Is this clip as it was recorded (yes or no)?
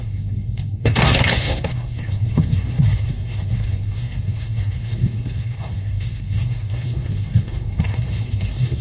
no